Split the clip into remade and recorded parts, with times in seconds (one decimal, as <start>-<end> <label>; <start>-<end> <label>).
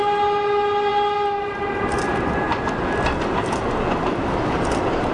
0.0-5.1 recorded